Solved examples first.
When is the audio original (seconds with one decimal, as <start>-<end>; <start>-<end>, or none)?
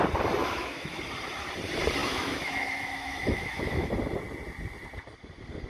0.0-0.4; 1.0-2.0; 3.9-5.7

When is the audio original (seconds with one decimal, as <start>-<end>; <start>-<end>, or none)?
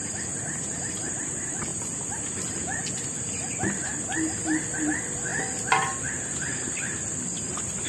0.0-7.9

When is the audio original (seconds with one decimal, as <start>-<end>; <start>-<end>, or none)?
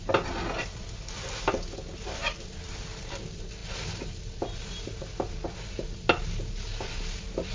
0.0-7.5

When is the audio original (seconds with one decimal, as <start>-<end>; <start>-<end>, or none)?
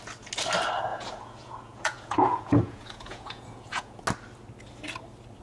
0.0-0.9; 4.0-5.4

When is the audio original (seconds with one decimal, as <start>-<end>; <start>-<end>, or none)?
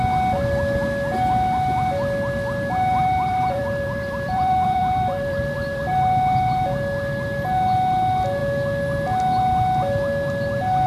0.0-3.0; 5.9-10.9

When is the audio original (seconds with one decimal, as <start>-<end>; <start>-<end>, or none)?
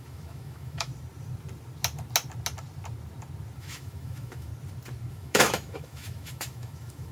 0.9-3.6; 4.5-5.1